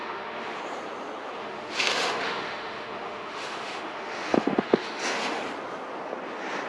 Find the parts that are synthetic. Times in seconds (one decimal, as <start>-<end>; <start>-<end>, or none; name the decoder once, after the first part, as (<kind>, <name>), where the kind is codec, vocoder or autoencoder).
0.0-0.6 (autoencoder, DAC-VAE); 1.4-5.4